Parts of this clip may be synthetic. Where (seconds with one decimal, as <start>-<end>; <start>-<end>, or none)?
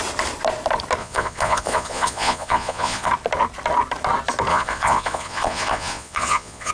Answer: 1.0-3.1; 4.5-6.7